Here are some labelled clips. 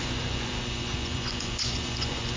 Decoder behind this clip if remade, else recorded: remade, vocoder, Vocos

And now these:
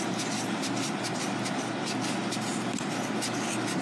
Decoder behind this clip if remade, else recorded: recorded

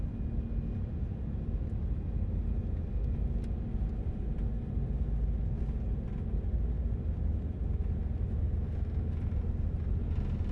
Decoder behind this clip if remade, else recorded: recorded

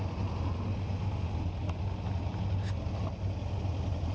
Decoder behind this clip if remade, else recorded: recorded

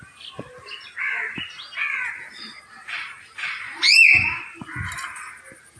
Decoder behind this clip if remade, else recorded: recorded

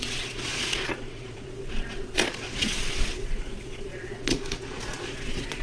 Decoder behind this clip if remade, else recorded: remade, vocoder, Vocos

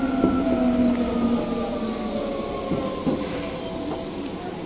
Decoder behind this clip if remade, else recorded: recorded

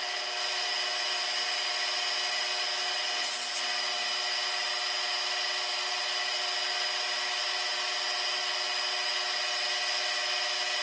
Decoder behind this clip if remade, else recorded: recorded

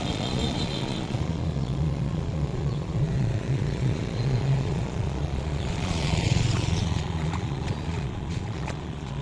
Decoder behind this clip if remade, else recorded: remade, vocoder, Vocos